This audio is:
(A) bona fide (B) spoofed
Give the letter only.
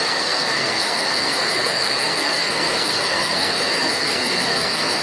B